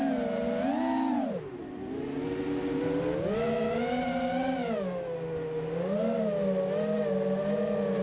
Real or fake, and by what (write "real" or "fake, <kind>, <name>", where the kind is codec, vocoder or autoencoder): real